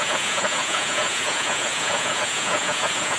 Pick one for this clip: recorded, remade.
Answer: remade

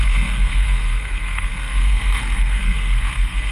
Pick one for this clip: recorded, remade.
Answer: remade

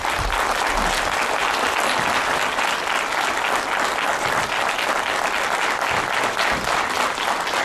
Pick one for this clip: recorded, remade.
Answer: recorded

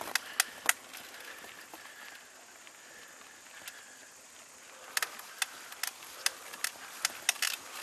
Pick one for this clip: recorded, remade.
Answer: recorded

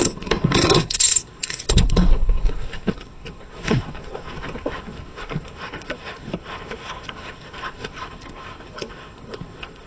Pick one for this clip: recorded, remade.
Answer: remade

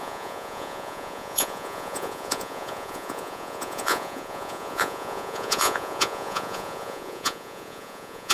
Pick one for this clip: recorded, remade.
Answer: remade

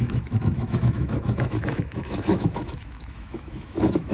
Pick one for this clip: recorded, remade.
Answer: remade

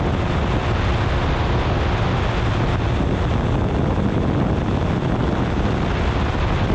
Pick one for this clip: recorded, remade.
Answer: recorded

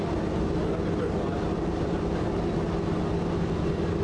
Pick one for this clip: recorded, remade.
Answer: recorded